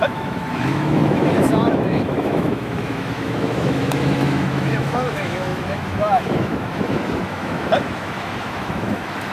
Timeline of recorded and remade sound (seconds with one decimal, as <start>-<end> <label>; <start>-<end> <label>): 0.0-9.3 remade